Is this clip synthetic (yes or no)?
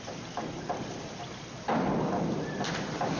yes